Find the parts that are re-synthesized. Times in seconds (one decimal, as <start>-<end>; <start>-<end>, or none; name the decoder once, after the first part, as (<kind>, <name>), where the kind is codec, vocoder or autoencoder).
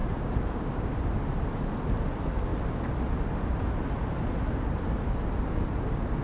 0.0-1.0 (codec, DAC)